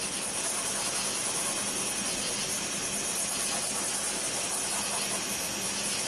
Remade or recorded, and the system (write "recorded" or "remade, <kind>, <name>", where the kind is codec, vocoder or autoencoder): recorded